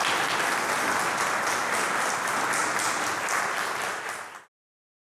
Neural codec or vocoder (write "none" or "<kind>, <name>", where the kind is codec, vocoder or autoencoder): none